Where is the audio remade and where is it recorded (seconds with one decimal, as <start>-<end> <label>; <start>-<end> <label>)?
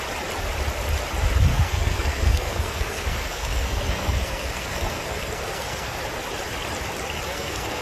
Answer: 0.0-1.5 recorded; 1.5-6.0 remade; 6.0-7.3 recorded; 7.3-7.8 remade